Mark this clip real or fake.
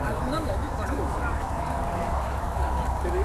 fake